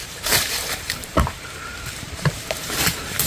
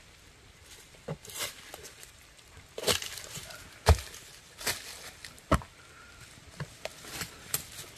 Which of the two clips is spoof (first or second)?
first